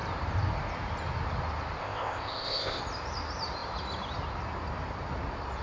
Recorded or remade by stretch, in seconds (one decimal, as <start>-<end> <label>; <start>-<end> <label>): 0.0-1.8 recorded; 1.8-2.8 remade; 2.8-5.6 recorded